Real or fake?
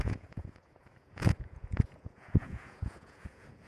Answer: fake